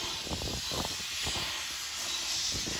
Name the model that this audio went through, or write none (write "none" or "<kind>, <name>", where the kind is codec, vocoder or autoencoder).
none